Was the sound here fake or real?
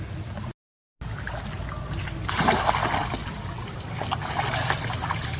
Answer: real